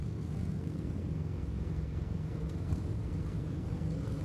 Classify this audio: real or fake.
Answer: fake